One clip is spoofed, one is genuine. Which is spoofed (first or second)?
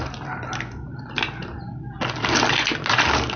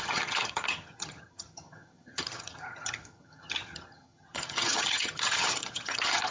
second